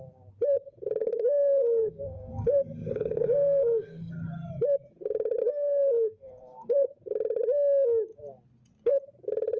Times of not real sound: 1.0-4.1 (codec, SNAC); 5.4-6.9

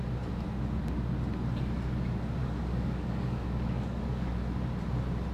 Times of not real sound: 2.4-4.3 (codec, DAC)

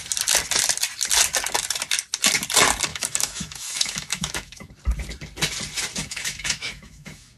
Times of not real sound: 2.9-4.7 (autoencoder, DAC-VAE); 6.0-7.4

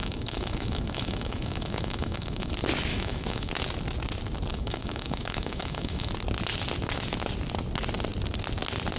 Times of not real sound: 0.0-2.5 (autoencoder, DAC-VAE); 2.9-3.5; 4.5-6.1

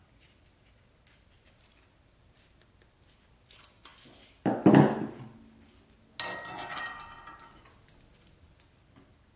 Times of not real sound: none